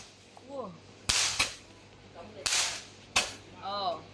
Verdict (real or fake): real